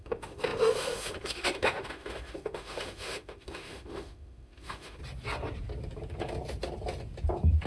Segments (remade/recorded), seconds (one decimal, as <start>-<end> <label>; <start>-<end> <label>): 0.0-5.0 remade; 5.0-7.7 recorded